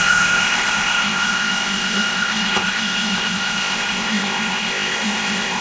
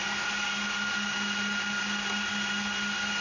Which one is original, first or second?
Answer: second